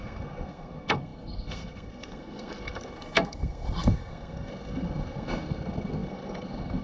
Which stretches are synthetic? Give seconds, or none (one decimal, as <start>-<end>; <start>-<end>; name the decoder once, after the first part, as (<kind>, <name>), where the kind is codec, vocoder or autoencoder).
0.0-6.8 (codec, SNAC)